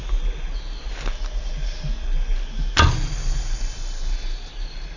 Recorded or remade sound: recorded